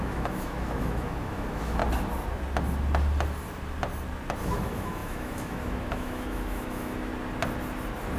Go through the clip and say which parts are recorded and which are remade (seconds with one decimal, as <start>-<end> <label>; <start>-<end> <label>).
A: 0.0-1.8 remade; 1.8-4.4 recorded; 4.4-7.1 remade; 7.1-8.2 recorded